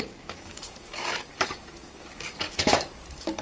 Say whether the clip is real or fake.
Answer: fake